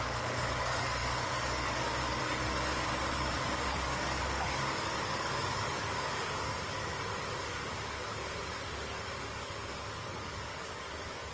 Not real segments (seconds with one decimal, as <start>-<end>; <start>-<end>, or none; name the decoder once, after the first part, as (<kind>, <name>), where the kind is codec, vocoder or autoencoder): 0.0-11.3 (codec, DAC)